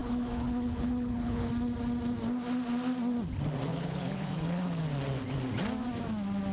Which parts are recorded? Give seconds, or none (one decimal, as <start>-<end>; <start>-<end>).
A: 1.5-3.7; 4.8-6.5